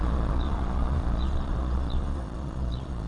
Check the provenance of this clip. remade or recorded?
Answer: remade